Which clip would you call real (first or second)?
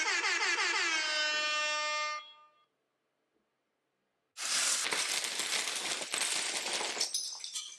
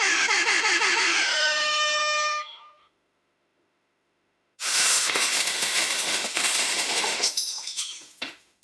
first